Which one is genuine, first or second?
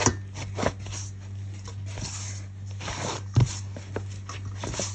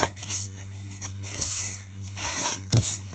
first